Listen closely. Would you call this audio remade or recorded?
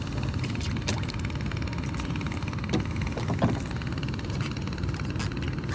recorded